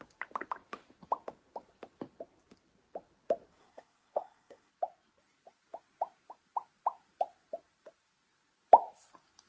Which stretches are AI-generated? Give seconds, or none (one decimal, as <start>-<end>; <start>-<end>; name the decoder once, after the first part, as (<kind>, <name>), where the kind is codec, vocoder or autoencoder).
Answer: 3.6-4.7 (codec, SNAC)